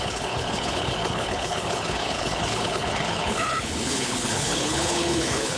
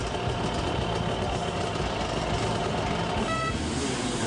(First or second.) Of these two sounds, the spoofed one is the first